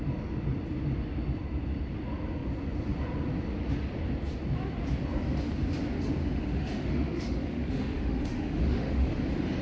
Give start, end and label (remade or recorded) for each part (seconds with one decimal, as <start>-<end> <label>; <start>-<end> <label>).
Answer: 0.0-6.2 recorded; 6.2-9.2 remade; 9.2-9.6 recorded